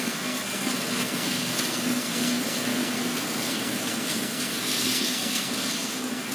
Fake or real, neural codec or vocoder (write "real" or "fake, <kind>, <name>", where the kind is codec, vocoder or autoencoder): fake, codec, SNAC